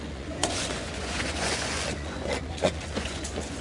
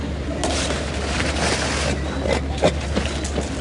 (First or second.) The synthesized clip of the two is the first